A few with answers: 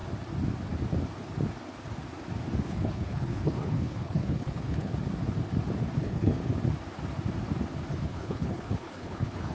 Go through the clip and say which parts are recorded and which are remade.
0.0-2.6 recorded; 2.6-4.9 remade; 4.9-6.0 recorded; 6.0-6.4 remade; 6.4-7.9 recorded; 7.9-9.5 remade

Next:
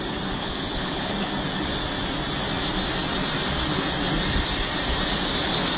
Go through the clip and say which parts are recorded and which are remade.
0.0-0.4 recorded; 0.4-1.1 remade; 1.1-5.8 recorded

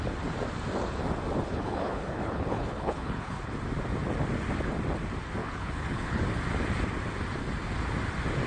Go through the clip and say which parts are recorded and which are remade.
0.0-1.5 recorded; 1.5-3.5 remade; 3.5-5.4 recorded; 5.4-6.2 remade; 6.2-8.5 recorded

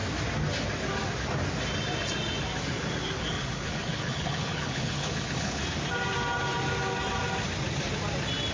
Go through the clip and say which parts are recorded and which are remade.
0.0-3.2 recorded; 3.2-5.6 remade; 5.6-8.5 recorded

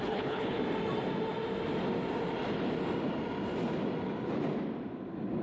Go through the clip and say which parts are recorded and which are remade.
0.0-0.6 remade; 0.6-5.4 recorded

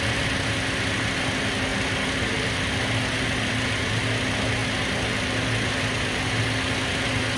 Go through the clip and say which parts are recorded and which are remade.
0.0-7.4 recorded

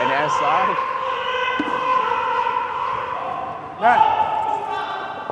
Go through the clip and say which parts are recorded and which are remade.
0.0-5.3 recorded

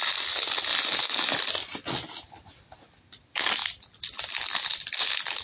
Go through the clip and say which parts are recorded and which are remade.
0.0-5.4 recorded